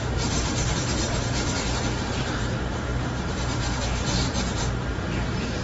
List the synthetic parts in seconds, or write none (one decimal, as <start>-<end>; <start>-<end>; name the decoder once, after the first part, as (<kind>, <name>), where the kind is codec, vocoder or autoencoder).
0.0-5.6 (vocoder, BigVGAN v2)